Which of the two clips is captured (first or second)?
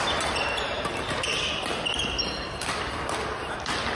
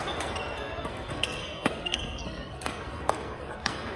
first